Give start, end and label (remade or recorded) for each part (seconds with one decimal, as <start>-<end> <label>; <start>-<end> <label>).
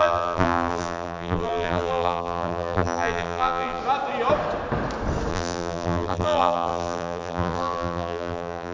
0.0-3.8 remade; 3.8-5.3 recorded; 5.3-8.7 remade